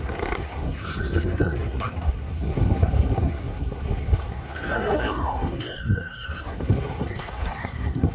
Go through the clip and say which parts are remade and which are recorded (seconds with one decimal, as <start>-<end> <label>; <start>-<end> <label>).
0.0-8.1 remade